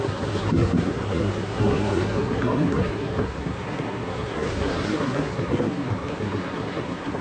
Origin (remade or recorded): remade